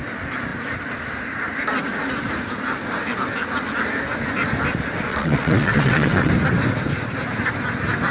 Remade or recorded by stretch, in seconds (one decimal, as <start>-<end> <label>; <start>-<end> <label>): 0.0-5.1 recorded; 5.1-6.3 remade; 6.3-8.1 recorded